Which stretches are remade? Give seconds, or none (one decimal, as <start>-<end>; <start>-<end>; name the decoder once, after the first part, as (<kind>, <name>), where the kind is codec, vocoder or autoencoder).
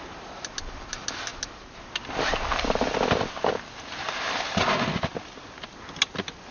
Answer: none